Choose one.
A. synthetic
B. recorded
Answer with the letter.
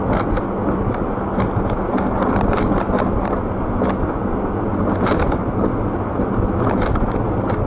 A